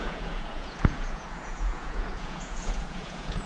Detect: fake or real fake